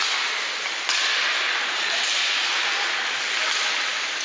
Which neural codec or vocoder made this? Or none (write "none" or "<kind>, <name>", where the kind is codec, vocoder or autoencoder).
none